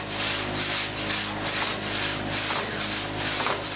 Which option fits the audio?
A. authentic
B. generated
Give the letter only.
A